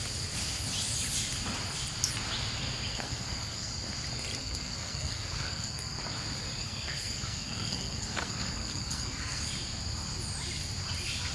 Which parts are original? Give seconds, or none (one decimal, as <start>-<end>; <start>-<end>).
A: 0.0-2.9; 3.7-4.4; 6.0-6.6; 9.5-11.3